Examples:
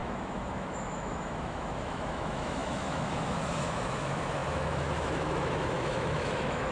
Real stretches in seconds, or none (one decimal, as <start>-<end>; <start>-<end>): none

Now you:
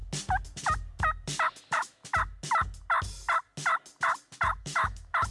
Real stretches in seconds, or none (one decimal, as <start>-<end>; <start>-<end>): 0.0-1.6; 2.0-4.6

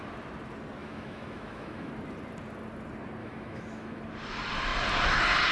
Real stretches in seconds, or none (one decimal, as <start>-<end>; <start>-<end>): 0.0-0.8; 1.9-3.2; 4.0-5.5

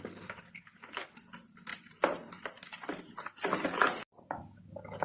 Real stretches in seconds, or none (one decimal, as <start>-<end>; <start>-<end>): 0.0-5.0

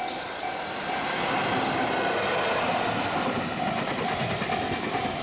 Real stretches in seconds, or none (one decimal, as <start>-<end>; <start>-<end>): 0.0-5.2

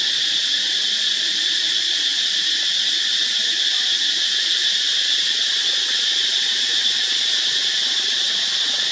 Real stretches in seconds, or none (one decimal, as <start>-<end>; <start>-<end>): 0.0-8.9